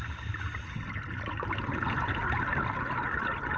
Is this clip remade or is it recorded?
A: recorded